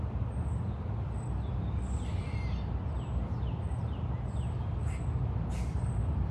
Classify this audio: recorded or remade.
recorded